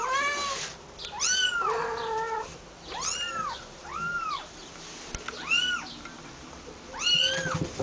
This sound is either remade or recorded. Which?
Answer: recorded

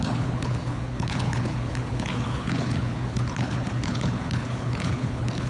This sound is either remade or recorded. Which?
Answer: remade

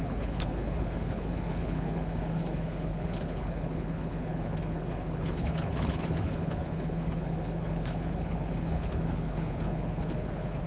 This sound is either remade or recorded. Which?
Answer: remade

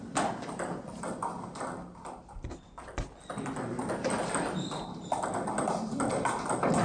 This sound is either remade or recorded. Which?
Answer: recorded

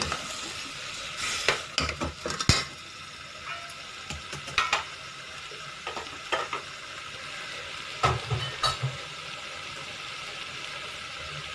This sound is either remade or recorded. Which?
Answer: recorded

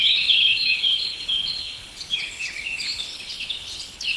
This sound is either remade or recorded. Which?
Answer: remade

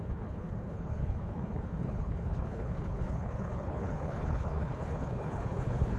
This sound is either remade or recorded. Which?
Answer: remade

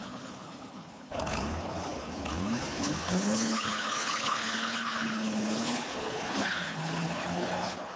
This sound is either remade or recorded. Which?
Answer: remade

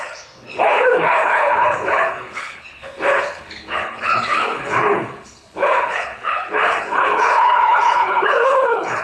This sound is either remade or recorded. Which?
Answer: remade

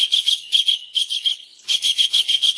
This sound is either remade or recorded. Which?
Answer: remade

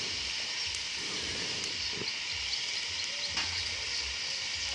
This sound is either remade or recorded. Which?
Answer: recorded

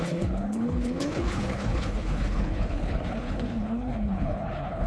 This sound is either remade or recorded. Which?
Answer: remade